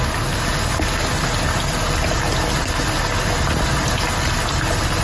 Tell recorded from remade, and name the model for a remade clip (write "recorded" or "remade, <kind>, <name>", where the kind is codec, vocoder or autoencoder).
recorded